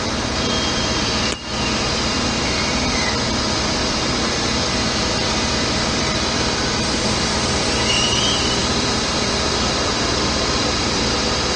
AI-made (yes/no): yes